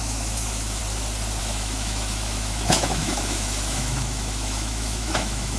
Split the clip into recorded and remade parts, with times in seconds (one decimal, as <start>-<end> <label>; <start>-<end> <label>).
0.0-0.8 remade; 0.8-1.4 recorded; 1.4-5.6 remade